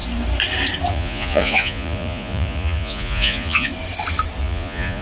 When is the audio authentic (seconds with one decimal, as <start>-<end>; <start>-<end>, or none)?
0.0-0.9; 3.7-4.4